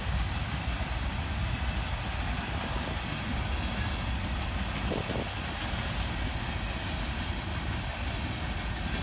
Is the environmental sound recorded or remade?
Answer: recorded